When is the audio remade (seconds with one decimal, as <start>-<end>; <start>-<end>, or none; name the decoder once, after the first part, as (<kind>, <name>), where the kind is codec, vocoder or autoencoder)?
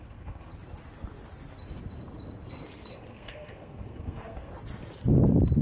0.0-0.5 (codec, SNAC); 2.9-4.5